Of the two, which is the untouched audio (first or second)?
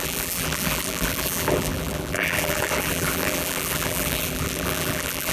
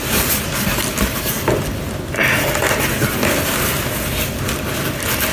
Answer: second